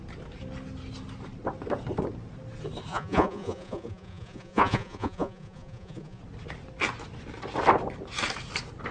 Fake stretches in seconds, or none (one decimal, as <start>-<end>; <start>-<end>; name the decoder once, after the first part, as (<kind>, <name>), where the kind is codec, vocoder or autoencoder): 2.9-6.2 (vocoder, Vocos)